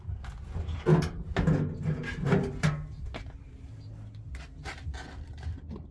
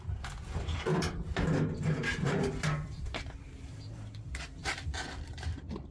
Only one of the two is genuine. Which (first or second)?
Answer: first